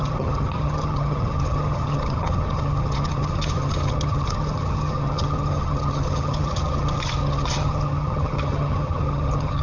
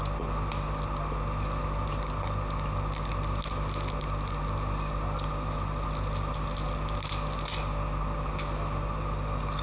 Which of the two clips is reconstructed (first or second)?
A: first